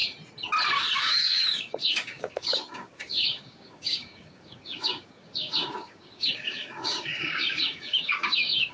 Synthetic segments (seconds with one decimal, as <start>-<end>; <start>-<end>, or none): 1.0-8.7